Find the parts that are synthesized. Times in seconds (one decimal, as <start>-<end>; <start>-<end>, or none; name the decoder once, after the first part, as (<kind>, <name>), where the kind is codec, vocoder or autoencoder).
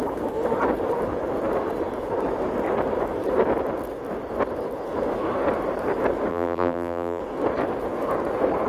6.3-7.2 (vocoder, BigVGAN v2)